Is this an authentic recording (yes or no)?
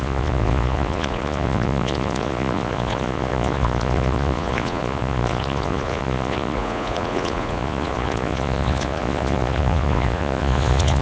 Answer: no